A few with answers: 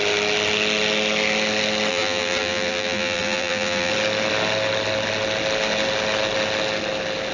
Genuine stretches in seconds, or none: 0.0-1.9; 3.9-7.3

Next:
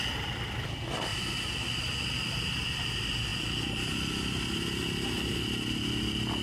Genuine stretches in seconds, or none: 0.0-6.4

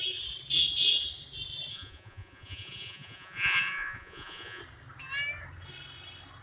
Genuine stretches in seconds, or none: 0.0-1.7; 4.6-6.4